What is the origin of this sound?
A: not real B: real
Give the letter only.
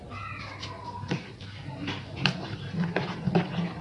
B